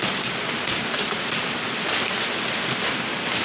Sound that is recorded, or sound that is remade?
recorded